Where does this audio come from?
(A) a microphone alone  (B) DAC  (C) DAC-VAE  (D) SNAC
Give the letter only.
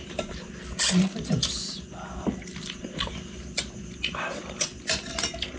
A